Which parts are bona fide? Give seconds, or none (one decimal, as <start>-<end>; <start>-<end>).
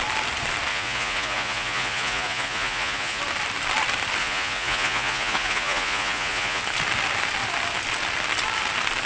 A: 0.0-0.7; 3.2-4.2; 6.6-9.1